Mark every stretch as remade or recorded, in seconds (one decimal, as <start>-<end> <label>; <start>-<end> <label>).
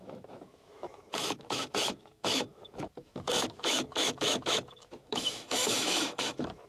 0.0-6.7 remade